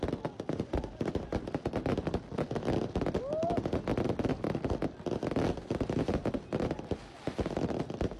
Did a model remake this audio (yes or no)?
yes